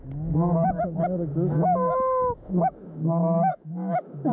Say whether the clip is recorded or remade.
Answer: remade